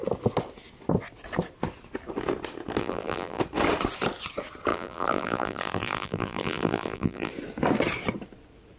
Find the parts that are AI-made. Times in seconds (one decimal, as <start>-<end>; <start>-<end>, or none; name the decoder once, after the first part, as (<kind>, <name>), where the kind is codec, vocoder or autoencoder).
2.8-3.4 (vocoder, BigVGAN v2); 4.7-7.3